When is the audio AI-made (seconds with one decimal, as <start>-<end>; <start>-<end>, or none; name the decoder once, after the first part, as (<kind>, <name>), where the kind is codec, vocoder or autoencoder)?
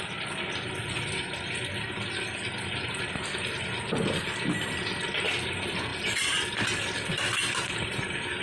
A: none